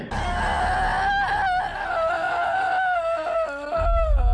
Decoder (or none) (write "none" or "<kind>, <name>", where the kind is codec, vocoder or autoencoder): none